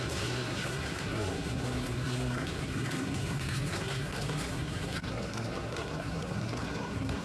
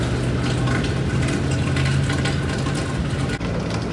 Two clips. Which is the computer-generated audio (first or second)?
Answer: first